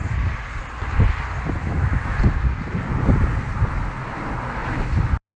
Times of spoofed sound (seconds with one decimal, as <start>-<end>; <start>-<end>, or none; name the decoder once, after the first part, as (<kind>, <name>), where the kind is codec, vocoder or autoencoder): 1.6-2.2 (autoencoder, DAC-VAE)